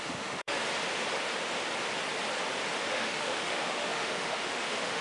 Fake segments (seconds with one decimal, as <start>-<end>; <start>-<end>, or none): 0.0-0.6; 2.9-5.0